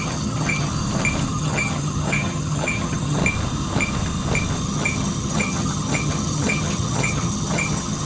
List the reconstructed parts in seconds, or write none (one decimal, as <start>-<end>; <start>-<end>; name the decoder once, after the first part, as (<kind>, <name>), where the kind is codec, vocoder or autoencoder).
0.0-0.7 (vocoder, HiFi-GAN); 1.3-3.2; 4.6-8.1